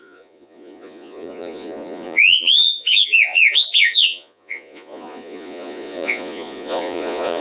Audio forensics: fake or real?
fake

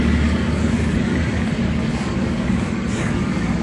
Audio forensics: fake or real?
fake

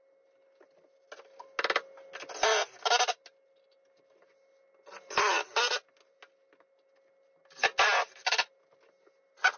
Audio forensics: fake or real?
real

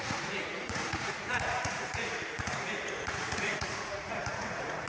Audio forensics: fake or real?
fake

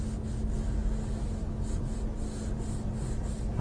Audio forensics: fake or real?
real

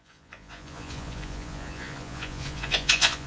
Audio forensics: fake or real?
fake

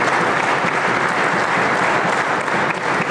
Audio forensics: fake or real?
real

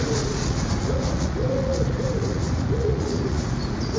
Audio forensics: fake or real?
fake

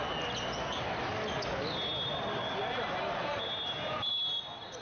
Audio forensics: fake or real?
real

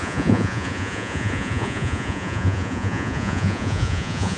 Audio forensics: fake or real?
fake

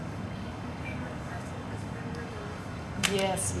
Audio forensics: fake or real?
fake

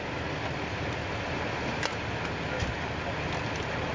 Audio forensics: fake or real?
real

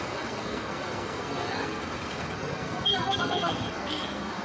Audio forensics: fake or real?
fake